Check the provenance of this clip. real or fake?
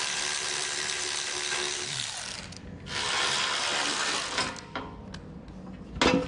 real